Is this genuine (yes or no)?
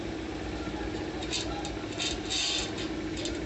yes